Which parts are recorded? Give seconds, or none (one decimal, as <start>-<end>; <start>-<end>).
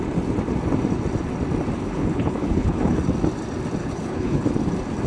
0.0-1.8; 3.0-3.8; 4.5-5.1